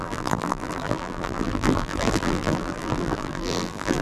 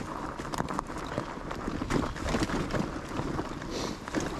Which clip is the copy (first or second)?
first